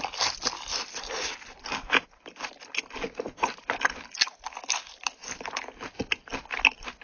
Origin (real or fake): real